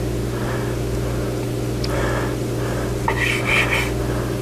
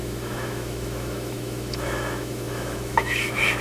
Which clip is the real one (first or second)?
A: first